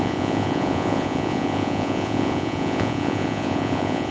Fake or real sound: fake